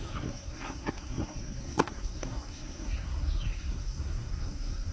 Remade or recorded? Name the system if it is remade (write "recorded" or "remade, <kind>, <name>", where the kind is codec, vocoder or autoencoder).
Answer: remade, codec, SNAC